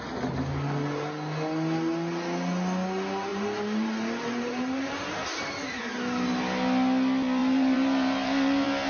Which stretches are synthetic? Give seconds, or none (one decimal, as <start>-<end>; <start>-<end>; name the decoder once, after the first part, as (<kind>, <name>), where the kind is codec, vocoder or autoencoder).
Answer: 3.3-5.8 (vocoder, BigVGAN v2); 7.4-8.9